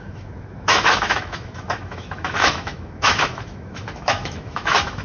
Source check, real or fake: fake